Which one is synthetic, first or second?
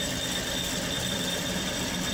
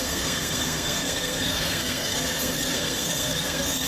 second